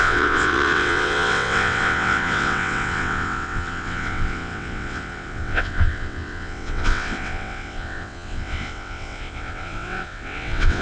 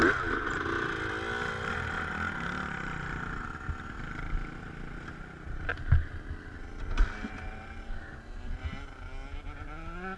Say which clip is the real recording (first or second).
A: second